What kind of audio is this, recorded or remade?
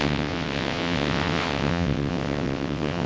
remade